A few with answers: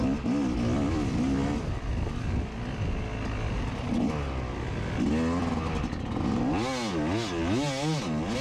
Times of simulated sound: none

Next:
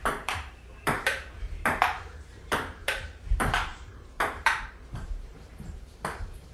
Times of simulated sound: 0.0-6.5 (vocoder, BigVGAN v2)

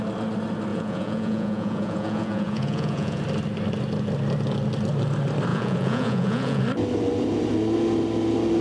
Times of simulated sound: 0.7-3.2 (vocoder, Vocos); 5.5-6.6

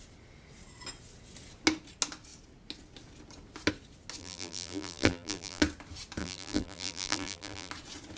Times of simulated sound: 4.2-5.6 (vocoder, BigVGAN v2); 6.2-7.7

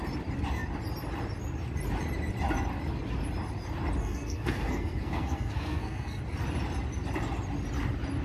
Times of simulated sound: 4.0-6.2 (codec, SNAC)

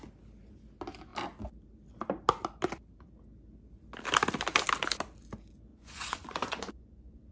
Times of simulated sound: 5.7-7.3 (vocoder, Vocos)